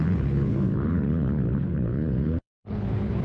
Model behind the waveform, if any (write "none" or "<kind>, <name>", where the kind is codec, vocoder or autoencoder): codec, HILCodec